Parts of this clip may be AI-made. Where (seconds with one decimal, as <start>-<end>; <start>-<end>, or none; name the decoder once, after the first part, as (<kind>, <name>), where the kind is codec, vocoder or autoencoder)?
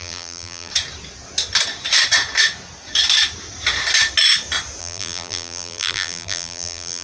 0.0-0.7 (vocoder, BigVGAN v2); 4.8-7.0